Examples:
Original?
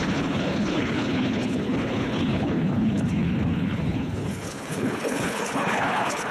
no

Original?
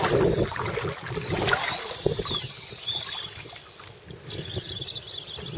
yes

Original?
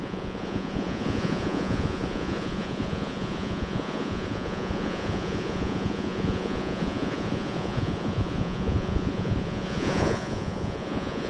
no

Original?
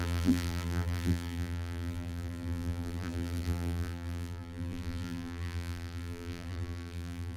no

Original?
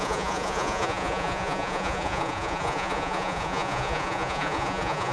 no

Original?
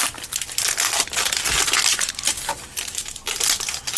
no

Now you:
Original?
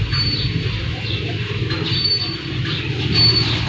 yes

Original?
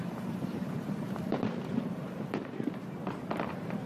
no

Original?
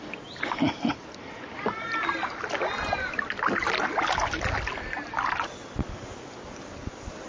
yes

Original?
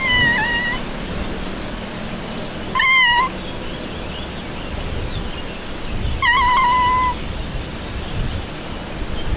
yes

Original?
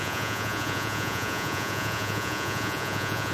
no